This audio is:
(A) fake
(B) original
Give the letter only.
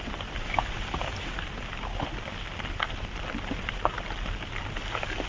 B